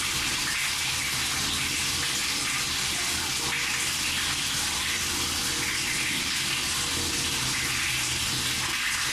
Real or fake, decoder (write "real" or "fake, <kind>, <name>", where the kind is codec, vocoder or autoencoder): real